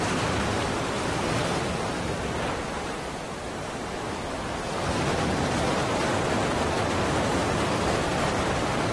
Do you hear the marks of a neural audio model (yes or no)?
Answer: yes